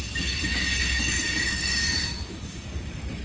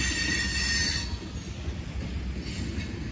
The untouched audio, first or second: second